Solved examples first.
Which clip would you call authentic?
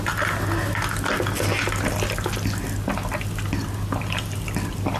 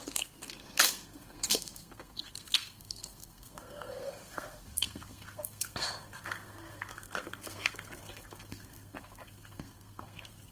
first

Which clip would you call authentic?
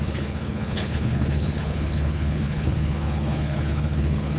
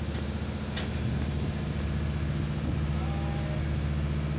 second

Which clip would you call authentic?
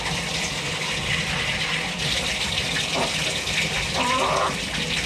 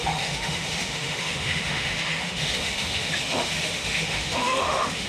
first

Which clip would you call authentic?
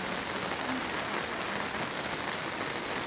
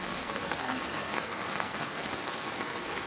first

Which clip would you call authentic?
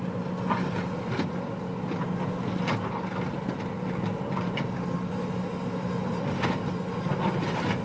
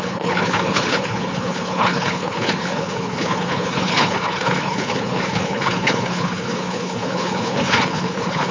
first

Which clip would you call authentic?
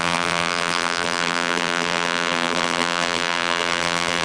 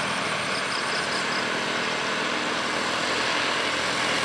second